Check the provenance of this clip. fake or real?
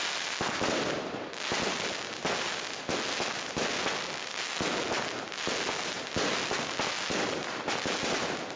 real